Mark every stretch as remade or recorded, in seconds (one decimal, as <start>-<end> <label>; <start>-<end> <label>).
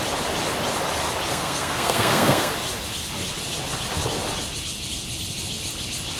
0.0-1.3 recorded; 1.3-2.5 remade; 2.5-6.2 recorded